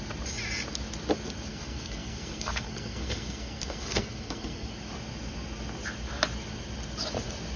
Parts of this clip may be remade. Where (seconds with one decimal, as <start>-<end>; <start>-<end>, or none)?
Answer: 1.5-4.7